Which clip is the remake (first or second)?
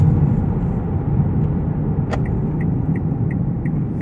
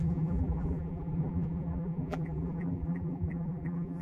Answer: second